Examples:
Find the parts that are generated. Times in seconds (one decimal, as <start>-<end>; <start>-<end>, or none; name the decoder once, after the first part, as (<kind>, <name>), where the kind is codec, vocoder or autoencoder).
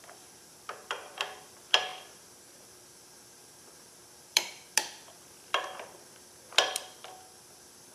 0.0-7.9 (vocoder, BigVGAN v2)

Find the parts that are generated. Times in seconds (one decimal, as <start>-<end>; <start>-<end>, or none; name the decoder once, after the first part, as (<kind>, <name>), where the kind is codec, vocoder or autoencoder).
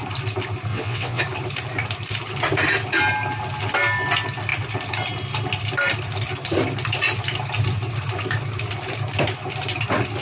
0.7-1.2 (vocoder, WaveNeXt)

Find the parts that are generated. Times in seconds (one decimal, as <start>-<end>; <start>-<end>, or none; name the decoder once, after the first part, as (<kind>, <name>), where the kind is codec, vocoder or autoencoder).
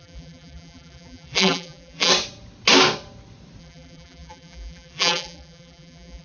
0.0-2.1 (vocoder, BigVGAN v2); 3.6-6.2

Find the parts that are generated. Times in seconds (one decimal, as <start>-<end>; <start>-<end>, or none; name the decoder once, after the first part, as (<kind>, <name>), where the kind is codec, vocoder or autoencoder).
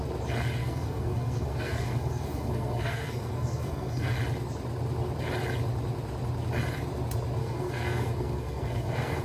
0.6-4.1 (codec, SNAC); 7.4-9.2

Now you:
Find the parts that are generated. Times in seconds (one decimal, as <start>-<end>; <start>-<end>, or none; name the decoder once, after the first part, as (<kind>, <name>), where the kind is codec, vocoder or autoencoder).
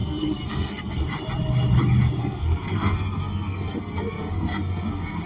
0.0-1.0 (codec, SNAC); 2.2-5.2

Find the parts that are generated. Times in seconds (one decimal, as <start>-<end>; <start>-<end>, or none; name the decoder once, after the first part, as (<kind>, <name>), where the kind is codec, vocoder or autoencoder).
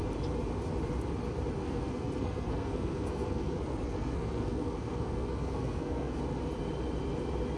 1.6-6.2 (codec, SNAC)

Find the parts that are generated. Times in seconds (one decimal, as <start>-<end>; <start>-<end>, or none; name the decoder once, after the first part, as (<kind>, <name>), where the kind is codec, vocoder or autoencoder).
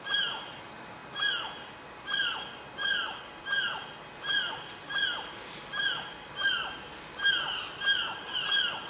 none